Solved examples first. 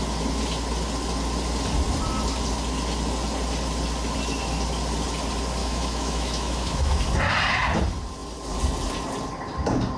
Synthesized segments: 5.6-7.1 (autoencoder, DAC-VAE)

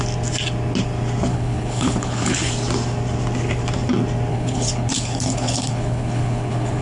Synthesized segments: 1.3-2.5 (codec, HILCodec); 4.3-6.8

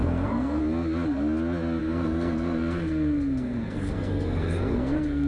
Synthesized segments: 0.0-0.6 (codec, SNAC); 1.8-5.3

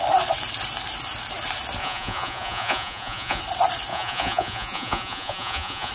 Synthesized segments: 1.8-3.4 (vocoder, Vocos); 3.9-5.9

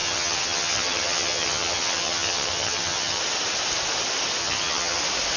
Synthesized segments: 0.0-3.2 (vocoder, HiFi-GAN); 4.4-5.0

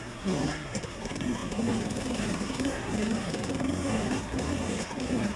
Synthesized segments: 0.0-5.4 (codec, SNAC)